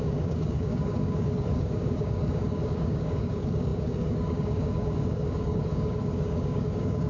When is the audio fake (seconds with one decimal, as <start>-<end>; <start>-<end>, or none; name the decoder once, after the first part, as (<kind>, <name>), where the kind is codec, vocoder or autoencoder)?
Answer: 0.0-7.1 (codec, DAC)